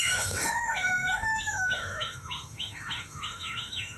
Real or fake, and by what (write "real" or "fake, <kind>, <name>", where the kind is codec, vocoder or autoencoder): fake, autoencoder, DAC-VAE